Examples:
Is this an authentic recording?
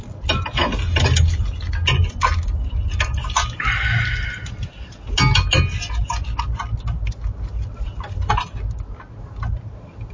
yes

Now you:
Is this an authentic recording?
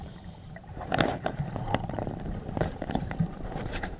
no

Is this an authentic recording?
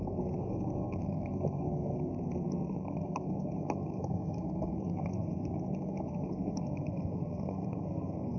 no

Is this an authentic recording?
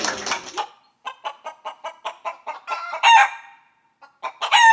yes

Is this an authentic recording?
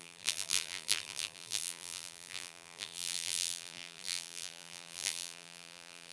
no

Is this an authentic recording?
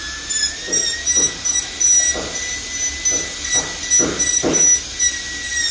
yes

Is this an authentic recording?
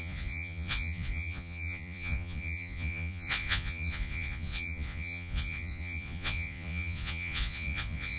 no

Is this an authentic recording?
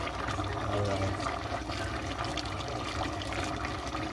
yes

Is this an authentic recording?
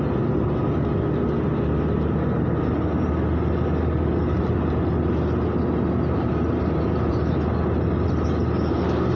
yes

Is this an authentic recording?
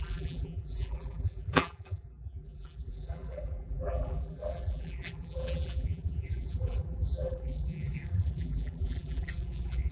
no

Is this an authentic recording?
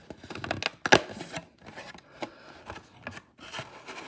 yes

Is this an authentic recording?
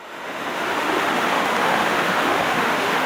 no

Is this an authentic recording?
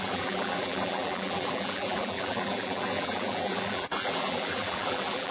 no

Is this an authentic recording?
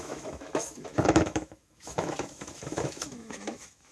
no